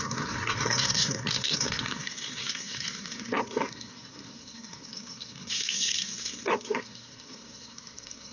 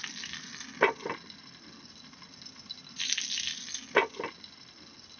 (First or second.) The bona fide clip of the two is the second